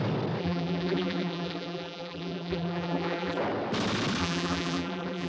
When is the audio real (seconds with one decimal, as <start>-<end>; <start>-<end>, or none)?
0.0-0.4; 3.4-4.2